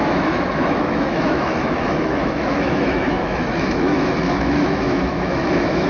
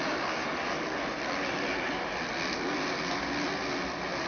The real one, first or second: second